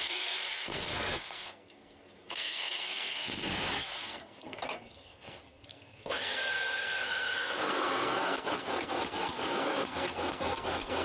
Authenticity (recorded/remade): remade